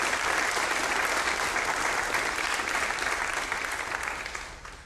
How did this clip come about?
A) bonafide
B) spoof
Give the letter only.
B